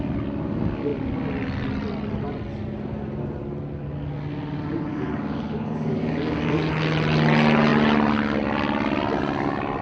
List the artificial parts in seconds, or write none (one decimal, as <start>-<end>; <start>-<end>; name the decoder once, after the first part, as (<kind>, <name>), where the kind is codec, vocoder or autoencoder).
4.9-6.7 (codec, DAC)

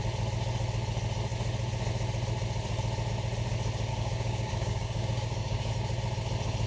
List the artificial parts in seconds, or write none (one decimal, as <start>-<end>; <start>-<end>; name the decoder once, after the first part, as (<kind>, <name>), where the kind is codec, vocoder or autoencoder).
3.9-5.7 (codec, DAC)

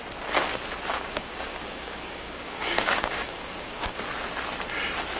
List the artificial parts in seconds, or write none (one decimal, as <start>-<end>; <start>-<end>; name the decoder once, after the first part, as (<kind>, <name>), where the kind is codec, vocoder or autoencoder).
0.9-4.0 (codec, DAC)

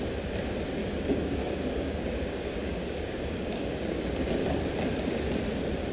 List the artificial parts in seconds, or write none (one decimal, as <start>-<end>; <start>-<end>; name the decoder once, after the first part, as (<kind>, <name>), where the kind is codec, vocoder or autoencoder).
0.8-4.3 (codec, DAC)

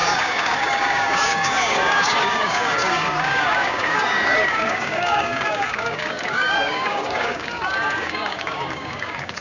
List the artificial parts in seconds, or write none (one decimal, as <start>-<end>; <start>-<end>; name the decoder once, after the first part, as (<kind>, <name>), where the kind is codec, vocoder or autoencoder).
0.0-9.4 (codec, DAC)